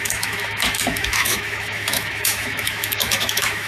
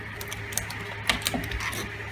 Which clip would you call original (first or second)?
second